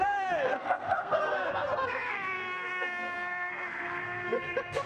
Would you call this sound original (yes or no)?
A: no